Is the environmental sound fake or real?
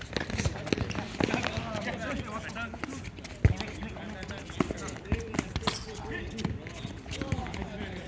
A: real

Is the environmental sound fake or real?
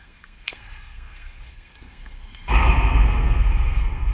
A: fake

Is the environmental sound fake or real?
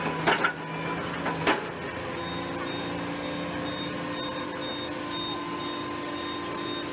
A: real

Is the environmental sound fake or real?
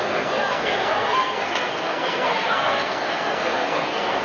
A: fake